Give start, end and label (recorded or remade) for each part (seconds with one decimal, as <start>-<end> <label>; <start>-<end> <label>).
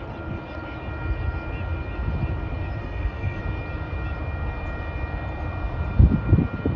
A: 0.0-2.8 recorded; 2.8-3.4 remade; 3.4-6.8 recorded